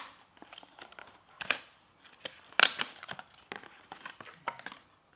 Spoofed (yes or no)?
no